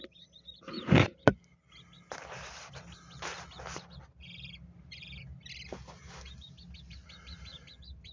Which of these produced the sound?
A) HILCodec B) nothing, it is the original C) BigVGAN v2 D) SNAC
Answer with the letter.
C